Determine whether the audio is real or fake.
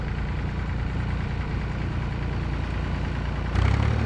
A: real